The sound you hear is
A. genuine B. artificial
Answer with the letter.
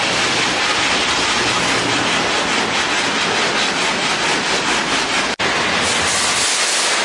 A